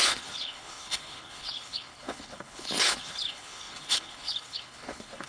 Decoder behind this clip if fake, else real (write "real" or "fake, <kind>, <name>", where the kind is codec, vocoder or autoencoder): fake, codec, HILCodec